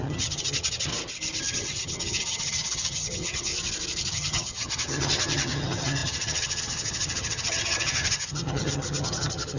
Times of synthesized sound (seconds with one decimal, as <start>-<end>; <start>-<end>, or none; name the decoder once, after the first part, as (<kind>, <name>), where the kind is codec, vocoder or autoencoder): 0.0-0.9 (vocoder, HiFi-GAN); 1.4-3.5; 4.1-9.6